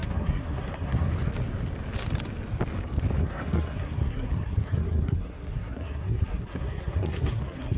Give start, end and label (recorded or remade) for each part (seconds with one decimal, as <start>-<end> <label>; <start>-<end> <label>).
0.0-1.1 remade; 1.1-3.2 recorded; 3.2-7.8 remade